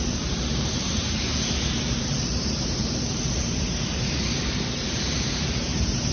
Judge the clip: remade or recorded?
remade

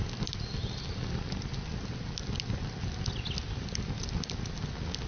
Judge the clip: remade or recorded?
recorded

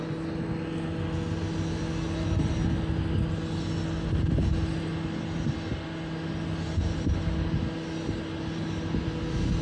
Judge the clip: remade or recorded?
recorded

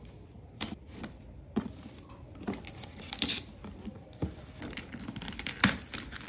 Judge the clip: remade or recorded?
remade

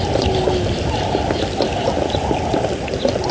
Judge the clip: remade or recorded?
recorded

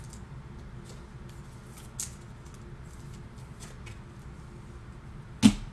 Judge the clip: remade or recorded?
recorded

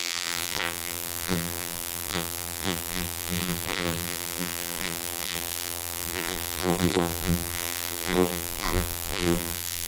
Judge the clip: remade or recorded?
remade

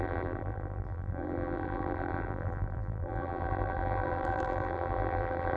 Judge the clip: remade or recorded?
remade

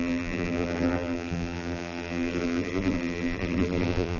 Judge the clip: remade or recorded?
remade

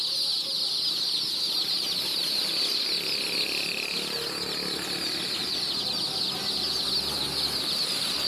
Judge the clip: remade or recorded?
recorded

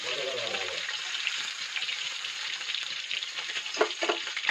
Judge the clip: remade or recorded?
remade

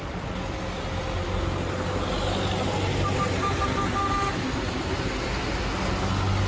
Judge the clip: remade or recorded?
recorded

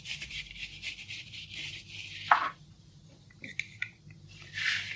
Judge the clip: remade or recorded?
remade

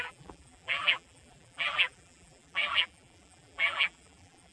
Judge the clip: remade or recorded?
remade